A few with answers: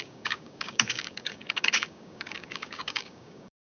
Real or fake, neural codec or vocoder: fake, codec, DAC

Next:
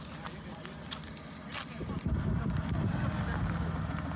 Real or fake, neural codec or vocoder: real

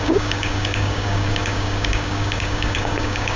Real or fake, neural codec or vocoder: fake, codec, DAC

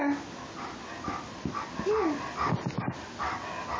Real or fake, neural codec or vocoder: real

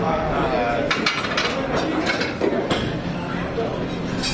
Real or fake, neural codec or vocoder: real